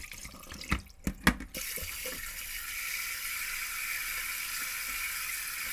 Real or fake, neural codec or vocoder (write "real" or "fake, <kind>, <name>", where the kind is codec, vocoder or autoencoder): real